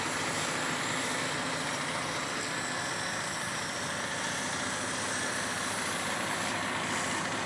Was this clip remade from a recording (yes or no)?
no